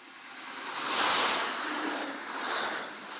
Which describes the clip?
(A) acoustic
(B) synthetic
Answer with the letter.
A